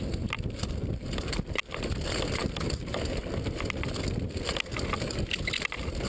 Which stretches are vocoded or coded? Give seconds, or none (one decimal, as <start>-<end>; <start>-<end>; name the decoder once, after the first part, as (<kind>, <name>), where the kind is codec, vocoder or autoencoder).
none